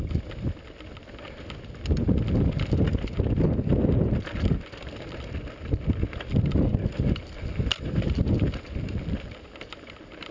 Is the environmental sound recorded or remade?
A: recorded